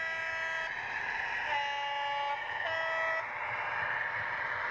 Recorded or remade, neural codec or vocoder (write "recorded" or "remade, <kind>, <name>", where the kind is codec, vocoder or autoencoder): recorded